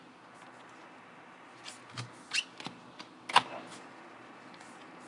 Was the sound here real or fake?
real